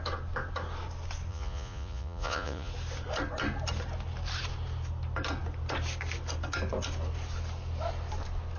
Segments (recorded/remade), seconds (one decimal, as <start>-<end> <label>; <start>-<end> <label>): 0.0-1.3 recorded; 1.3-2.7 remade; 2.7-8.6 recorded